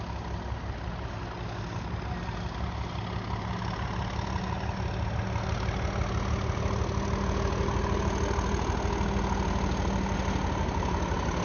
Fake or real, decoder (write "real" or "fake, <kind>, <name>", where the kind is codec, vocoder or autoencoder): real